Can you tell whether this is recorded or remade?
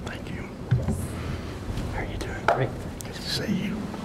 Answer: remade